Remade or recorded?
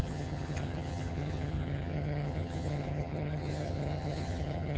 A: remade